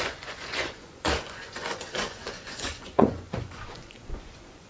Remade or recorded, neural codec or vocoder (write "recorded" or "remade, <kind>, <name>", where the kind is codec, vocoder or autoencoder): remade, vocoder, Vocos